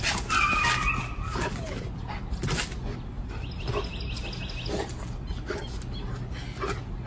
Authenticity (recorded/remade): recorded